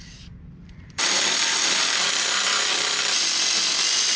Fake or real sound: fake